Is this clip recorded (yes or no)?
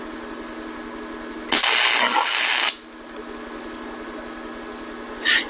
yes